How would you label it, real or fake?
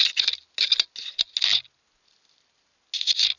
real